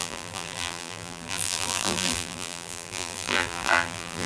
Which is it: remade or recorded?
remade